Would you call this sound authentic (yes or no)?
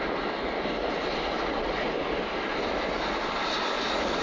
yes